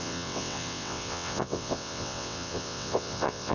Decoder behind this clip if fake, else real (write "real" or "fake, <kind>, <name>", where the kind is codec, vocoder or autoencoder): fake, vocoder, WaveNeXt